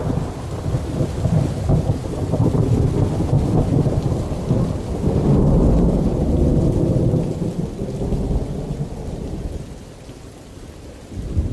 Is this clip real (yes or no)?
yes